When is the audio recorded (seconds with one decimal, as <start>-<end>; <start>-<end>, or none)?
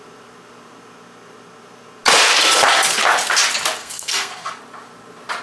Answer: 0.0-3.8; 4.6-5.4